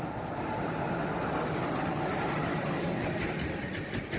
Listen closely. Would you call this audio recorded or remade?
recorded